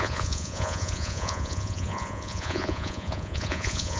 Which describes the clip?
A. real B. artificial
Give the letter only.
B